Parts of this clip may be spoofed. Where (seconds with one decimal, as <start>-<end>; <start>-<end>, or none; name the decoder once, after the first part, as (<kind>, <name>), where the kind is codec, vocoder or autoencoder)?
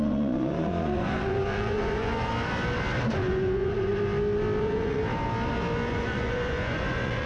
0.0-2.3 (vocoder, Vocos); 3.2-3.9; 4.6-5.0; 5.9-7.3